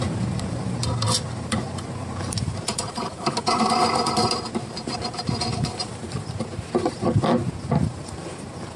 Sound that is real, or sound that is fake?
fake